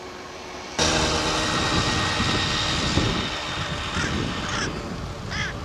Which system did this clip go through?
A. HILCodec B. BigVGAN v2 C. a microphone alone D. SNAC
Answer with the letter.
C